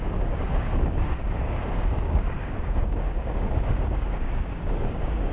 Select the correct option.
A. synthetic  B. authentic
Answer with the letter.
A